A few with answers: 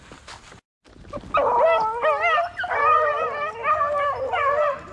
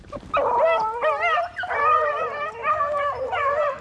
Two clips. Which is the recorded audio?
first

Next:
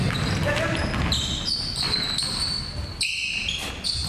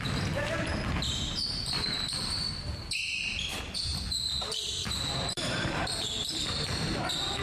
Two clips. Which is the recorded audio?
first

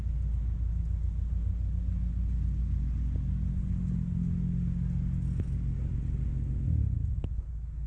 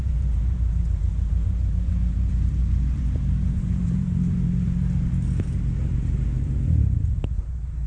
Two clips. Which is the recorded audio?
first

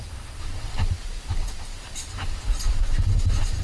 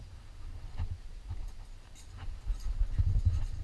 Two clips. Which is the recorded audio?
second